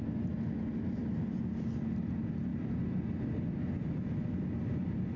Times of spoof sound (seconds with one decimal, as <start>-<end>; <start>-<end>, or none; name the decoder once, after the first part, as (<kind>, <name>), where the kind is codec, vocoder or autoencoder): none